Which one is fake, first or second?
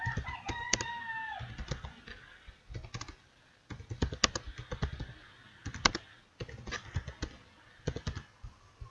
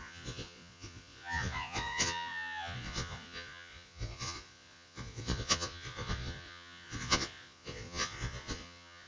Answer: second